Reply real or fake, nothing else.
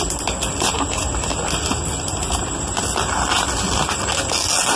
real